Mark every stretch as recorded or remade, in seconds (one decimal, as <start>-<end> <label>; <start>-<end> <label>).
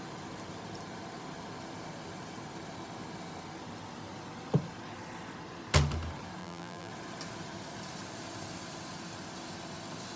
0.0-6.4 recorded; 6.4-6.9 remade; 6.9-10.2 recorded